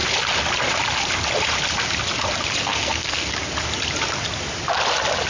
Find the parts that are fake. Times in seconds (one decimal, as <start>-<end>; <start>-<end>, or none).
2.6-3.3